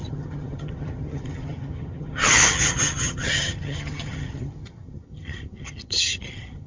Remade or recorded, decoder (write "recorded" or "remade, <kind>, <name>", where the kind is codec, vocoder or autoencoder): remade, vocoder, HiFi-GAN